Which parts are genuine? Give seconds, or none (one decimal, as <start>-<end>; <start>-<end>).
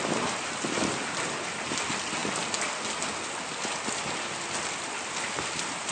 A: 0.0-5.9